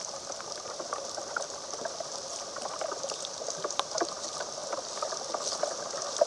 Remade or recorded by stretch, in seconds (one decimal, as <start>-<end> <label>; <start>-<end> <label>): 0.0-6.3 recorded